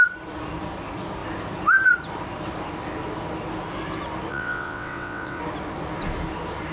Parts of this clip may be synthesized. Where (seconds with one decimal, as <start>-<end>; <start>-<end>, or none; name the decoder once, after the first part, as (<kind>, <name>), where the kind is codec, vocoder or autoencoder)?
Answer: 4.3-5.4 (vocoder, WaveNeXt)